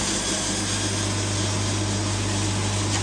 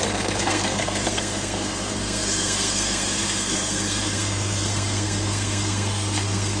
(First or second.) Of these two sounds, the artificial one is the second